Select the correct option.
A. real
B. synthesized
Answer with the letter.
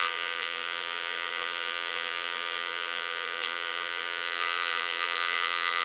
B